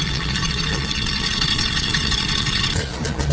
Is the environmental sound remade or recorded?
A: remade